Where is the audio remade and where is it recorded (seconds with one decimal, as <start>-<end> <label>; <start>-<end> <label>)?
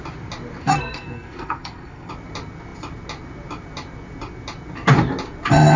0.0-0.6 recorded; 0.6-2.1 remade; 2.1-5.8 recorded